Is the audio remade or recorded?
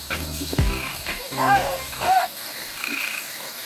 remade